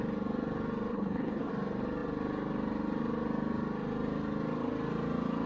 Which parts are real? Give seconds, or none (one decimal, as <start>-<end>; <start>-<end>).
0.0-0.9; 1.5-5.5